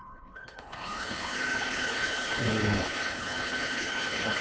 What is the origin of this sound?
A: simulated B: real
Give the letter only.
A